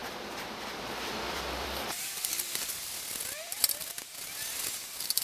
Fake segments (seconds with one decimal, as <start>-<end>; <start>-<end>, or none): 0.0-2.2